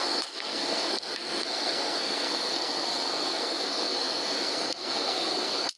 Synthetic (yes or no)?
yes